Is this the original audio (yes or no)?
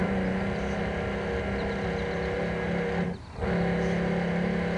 yes